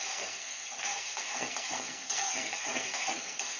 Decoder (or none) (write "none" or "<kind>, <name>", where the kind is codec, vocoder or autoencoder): codec, SNAC